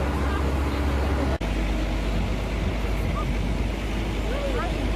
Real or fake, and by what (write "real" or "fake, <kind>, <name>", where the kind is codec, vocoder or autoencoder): real